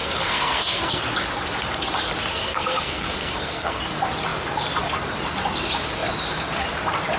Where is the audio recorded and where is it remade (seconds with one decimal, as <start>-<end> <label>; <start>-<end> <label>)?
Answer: 0.0-1.0 remade; 1.0-2.3 recorded; 2.3-3.8 remade; 3.8-7.2 recorded

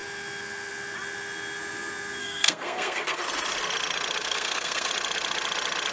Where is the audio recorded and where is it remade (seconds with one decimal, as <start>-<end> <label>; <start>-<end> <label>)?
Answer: 0.0-2.2 recorded; 2.2-3.2 remade; 3.2-4.2 recorded; 4.2-4.9 remade; 4.9-5.9 recorded

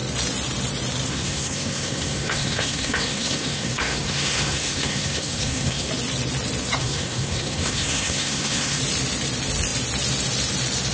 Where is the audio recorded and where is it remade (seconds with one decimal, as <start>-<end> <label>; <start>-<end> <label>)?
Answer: 0.0-1.1 recorded; 1.1-5.9 remade; 5.9-6.8 recorded; 6.8-8.8 remade; 8.8-10.9 recorded

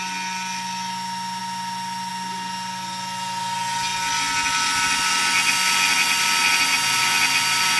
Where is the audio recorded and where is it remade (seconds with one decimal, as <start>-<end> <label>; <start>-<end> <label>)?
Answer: 0.0-7.8 recorded

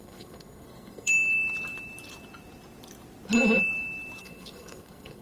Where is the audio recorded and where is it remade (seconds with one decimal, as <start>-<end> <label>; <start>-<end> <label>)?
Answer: 0.0-1.1 remade; 1.1-4.2 recorded; 4.2-5.2 remade

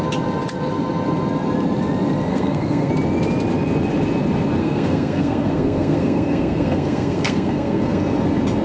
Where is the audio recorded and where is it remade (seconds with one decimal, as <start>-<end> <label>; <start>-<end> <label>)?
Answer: 0.0-2.3 recorded; 2.3-2.9 remade; 2.9-4.6 recorded; 4.6-8.0 remade; 8.0-8.6 recorded

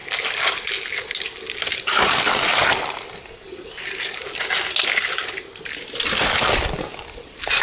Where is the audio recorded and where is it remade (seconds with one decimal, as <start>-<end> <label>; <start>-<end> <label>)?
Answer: 0.0-7.6 recorded